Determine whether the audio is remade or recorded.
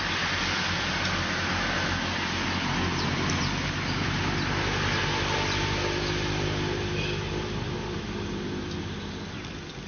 recorded